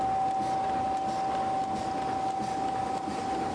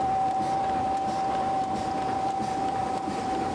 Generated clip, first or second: second